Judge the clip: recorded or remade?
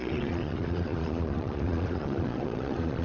remade